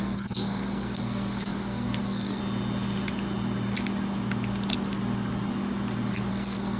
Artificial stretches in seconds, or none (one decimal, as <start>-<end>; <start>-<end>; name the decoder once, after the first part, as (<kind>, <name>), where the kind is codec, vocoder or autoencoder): 0.0-2.4 (codec, SNAC); 6.3-6.8